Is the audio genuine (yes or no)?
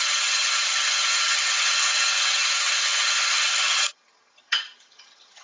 no